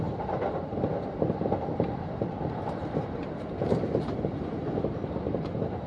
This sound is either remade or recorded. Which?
remade